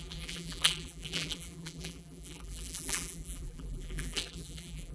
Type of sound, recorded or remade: remade